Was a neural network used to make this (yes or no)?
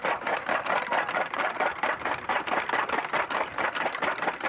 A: yes